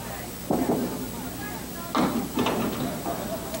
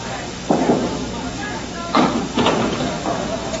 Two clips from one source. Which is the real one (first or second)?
first